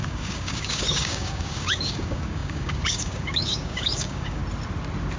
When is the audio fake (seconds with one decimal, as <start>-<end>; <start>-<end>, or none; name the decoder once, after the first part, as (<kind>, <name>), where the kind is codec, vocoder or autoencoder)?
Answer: 0.0-4.4 (codec, DAC)